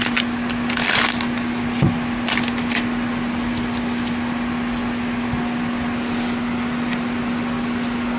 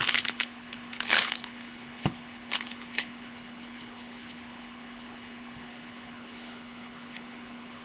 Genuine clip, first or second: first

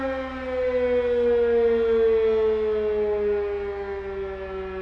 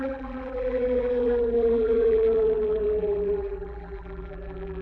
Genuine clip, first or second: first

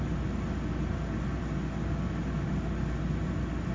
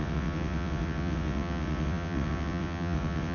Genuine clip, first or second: first